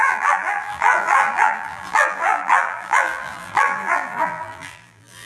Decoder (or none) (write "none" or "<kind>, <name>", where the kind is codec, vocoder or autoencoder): vocoder, BigVGAN v2